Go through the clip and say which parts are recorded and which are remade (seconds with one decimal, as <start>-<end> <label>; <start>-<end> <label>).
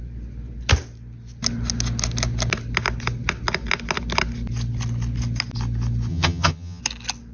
0.0-6.1 recorded; 6.1-6.8 remade; 6.8-7.3 recorded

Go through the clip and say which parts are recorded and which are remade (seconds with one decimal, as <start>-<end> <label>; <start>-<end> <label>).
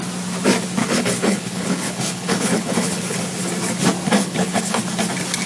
0.0-0.8 recorded; 0.8-3.2 remade; 3.2-4.2 recorded; 4.2-4.8 remade; 4.8-5.5 recorded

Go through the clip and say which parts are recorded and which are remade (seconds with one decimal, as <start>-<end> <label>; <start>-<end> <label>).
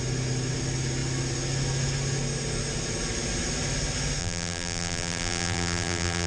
0.0-4.2 recorded; 4.2-6.3 remade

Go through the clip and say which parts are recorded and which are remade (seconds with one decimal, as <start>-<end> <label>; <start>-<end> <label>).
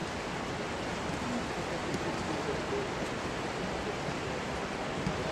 0.0-5.3 recorded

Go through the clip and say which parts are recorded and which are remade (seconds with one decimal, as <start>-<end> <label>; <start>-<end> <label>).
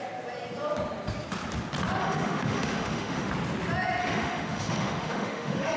0.0-2.0 recorded; 2.0-3.3 remade; 3.3-4.0 recorded; 4.0-5.8 remade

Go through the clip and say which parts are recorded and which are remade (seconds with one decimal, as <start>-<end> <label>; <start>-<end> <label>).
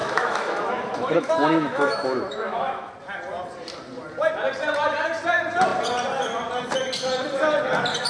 0.0-2.9 remade; 2.9-8.1 recorded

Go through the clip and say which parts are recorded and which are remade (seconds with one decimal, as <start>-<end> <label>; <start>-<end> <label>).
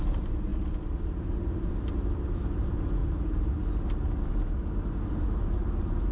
0.0-3.0 recorded; 3.0-3.6 remade; 3.6-6.1 recorded